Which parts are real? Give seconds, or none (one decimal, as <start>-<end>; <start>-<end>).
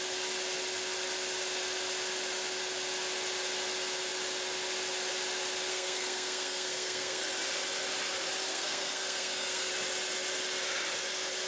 0.0-5.7; 7.2-8.5; 9.7-11.5